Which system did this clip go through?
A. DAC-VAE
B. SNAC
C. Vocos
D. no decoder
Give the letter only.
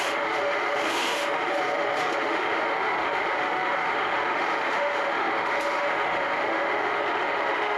A